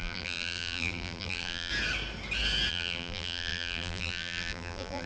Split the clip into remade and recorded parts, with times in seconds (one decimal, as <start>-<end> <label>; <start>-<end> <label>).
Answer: 0.0-1.7 remade; 1.7-2.7 recorded; 2.7-5.1 remade